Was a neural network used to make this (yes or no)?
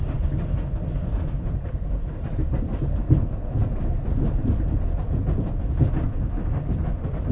no